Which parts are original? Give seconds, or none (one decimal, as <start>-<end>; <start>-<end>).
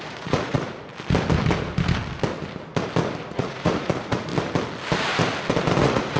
0.9-3.3; 4.3-5.8